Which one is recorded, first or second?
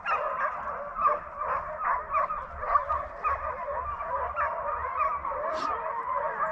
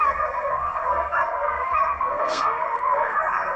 first